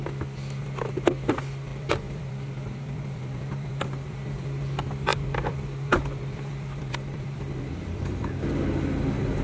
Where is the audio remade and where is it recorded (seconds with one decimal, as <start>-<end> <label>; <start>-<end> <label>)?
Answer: 0.0-1.7 recorded; 1.7-4.3 remade; 4.3-5.1 recorded; 5.1-8.3 remade; 8.3-9.4 recorded